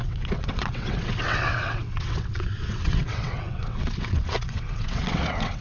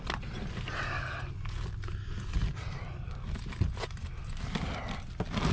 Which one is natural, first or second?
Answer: second